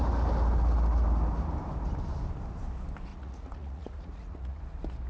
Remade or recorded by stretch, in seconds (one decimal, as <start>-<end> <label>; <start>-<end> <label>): 0.0-3.1 recorded; 3.1-4.6 remade; 4.6-5.1 recorded